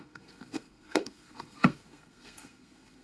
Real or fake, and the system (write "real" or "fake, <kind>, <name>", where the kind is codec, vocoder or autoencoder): fake, codec, SNAC